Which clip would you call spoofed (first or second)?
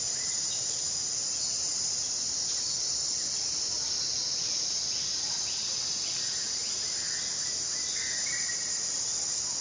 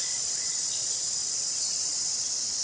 second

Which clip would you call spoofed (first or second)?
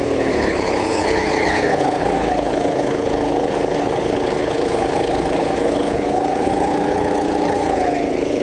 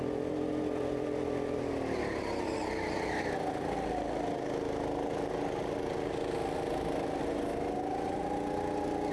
first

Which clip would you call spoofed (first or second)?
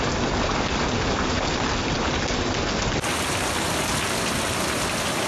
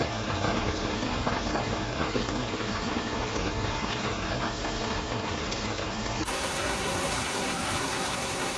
second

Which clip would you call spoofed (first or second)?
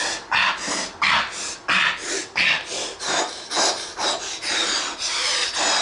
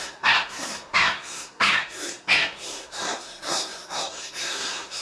second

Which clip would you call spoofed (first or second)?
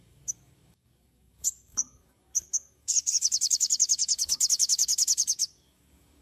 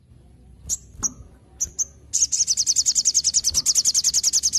first